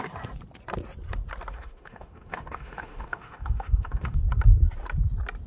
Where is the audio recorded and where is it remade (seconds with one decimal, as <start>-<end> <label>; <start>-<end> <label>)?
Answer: 0.0-1.5 recorded; 1.5-4.2 remade; 4.2-5.5 recorded